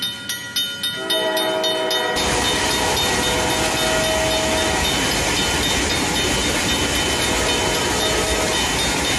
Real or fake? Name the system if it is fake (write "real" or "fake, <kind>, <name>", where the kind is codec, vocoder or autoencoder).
real